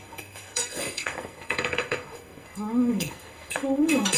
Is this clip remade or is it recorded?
remade